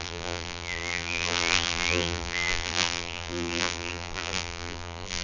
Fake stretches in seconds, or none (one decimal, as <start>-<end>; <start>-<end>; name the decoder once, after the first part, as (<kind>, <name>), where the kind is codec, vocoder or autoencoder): 0.0-5.2 (vocoder, BigVGAN v2)